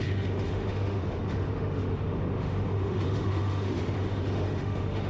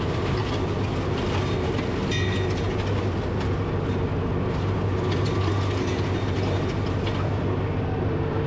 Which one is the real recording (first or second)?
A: second